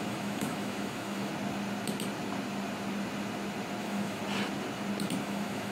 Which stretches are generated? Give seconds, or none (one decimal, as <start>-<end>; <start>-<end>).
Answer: 0.0-1.3; 3.8-4.2; 5.2-5.7